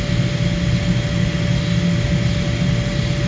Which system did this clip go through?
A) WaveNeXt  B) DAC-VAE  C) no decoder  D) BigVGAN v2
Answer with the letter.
C